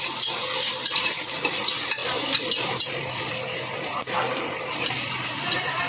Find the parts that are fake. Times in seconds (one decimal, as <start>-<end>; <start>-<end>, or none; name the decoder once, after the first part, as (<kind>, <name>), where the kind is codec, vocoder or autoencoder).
none